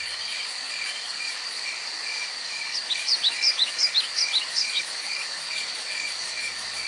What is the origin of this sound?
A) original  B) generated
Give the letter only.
B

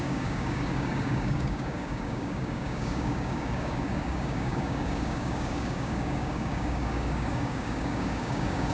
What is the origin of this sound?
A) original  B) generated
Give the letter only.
B